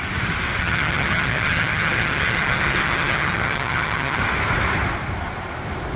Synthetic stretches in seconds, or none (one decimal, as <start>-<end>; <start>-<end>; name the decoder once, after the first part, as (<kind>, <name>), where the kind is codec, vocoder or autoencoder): 0.6-4.2 (vocoder, HiFi-GAN)